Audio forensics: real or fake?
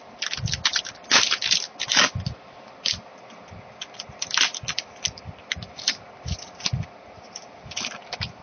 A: real